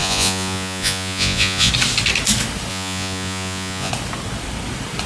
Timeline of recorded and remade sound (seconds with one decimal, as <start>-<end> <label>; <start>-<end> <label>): 0.0-1.7 remade; 1.7-2.7 recorded; 2.7-3.9 remade; 3.9-5.1 recorded